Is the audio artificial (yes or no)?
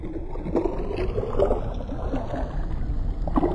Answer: no